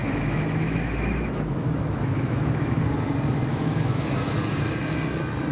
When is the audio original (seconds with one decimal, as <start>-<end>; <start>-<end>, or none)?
2.8-3.5; 4.2-5.5